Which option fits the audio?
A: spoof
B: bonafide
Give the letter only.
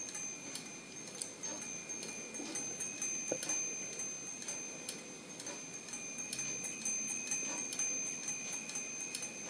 B